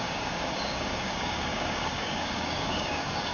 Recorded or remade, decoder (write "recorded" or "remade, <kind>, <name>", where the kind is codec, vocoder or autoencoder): remade, codec, DAC